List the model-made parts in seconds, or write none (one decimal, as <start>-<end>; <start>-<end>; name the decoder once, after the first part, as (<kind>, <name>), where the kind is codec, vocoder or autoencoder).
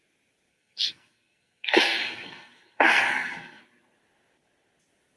0.5-3.6 (codec, SNAC)